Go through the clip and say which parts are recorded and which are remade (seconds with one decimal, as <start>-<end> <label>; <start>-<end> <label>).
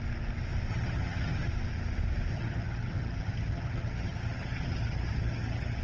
0.0-0.7 recorded; 0.7-1.5 remade; 1.5-2.3 recorded; 2.3-5.8 remade